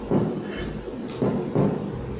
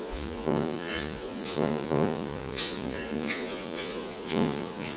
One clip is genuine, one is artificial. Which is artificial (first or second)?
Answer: second